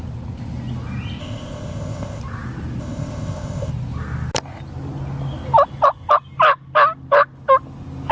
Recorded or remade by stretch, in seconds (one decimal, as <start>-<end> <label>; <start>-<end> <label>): 0.0-1.2 recorded; 1.2-2.2 remade; 2.2-2.8 recorded; 2.8-3.7 remade; 3.7-8.1 recorded